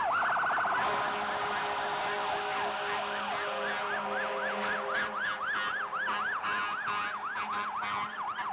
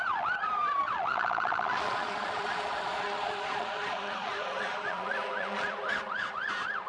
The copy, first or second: second